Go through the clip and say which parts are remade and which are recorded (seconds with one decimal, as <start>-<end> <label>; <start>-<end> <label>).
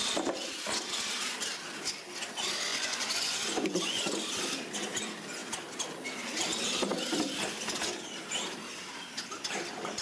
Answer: 0.0-2.7 recorded; 2.7-4.1 remade; 4.1-10.0 recorded